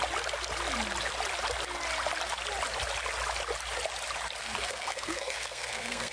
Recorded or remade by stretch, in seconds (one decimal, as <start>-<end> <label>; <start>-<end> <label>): 0.0-4.4 recorded; 4.4-6.1 remade